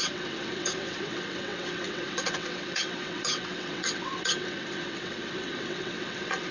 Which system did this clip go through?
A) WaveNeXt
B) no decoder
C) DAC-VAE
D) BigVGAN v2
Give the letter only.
A